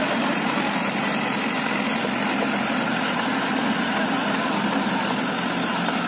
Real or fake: real